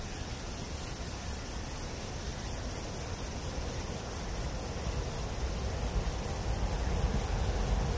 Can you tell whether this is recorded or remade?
recorded